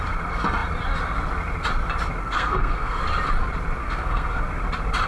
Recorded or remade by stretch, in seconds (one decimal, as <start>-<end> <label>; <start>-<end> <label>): 0.0-2.2 recorded; 2.2-3.0 remade; 3.0-3.8 recorded; 3.8-4.4 remade; 4.4-5.1 recorded